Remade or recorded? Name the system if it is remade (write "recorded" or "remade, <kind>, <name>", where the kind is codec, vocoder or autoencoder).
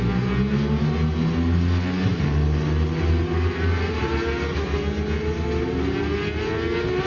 recorded